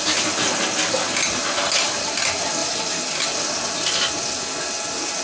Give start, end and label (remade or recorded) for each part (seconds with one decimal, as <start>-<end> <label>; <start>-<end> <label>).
0.0-5.2 recorded